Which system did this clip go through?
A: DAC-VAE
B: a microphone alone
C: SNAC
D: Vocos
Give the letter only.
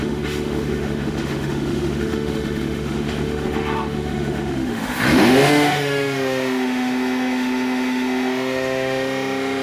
A